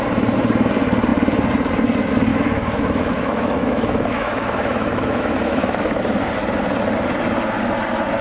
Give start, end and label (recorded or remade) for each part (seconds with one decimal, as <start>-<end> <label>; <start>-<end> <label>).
0.0-2.3 recorded; 2.3-6.0 remade; 6.0-8.2 recorded